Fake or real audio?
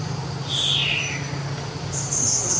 real